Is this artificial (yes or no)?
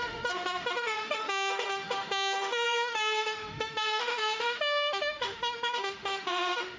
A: yes